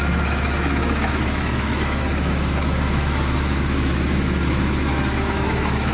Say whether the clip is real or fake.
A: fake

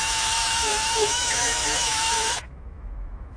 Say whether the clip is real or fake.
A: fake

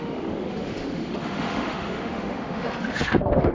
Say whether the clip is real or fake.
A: fake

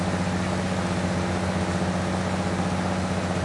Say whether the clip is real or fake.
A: real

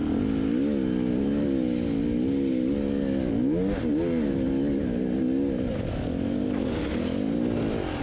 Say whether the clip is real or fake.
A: real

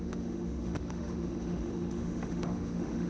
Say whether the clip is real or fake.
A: fake